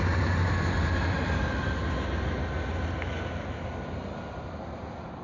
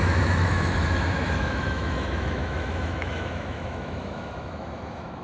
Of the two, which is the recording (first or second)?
first